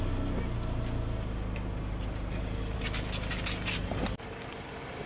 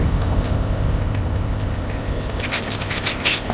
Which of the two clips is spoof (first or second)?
second